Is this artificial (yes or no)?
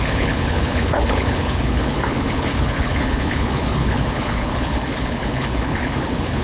yes